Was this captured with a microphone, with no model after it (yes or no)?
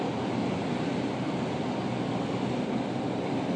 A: yes